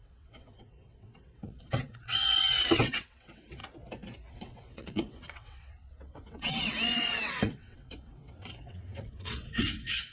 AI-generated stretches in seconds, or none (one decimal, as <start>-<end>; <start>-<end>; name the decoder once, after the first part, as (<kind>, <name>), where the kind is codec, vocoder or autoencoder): 0.0-3.6 (vocoder, WaveNeXt); 4.3-10.1